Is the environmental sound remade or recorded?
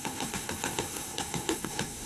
remade